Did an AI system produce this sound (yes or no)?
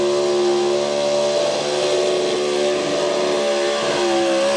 no